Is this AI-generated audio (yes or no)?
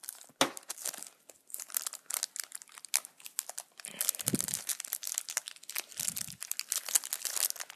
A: no